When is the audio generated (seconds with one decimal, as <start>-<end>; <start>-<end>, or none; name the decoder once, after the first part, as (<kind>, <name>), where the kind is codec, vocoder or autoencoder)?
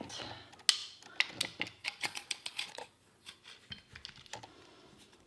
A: 1.8-3.4 (vocoder, Vocos)